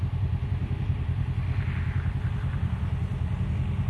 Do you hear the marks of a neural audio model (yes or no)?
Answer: no